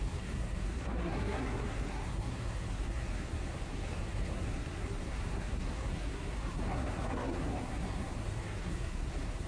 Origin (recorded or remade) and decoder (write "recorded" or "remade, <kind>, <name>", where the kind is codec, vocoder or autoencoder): remade, codec, SNAC